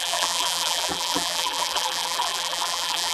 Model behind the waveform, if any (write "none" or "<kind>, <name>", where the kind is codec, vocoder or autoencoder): vocoder, BigVGAN v2